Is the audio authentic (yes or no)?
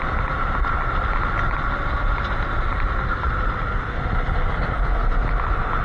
yes